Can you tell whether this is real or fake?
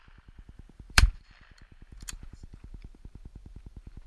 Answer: fake